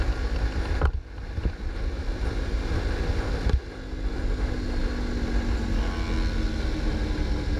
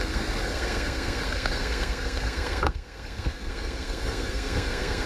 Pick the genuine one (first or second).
first